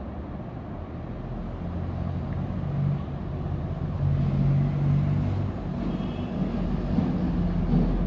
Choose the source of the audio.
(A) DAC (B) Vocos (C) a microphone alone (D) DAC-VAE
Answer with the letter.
C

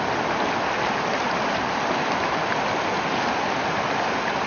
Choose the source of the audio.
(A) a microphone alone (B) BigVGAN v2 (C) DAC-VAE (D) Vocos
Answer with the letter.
A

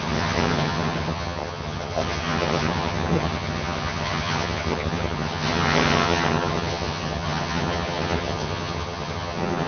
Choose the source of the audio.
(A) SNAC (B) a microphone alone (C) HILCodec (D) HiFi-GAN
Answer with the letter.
D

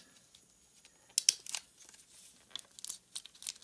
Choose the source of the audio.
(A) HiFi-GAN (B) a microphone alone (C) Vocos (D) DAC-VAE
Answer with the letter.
B